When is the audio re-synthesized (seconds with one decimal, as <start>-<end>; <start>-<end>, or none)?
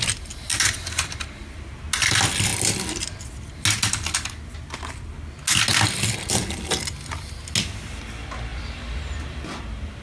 0.5-1.8; 5.7-6.7; 8.5-9.6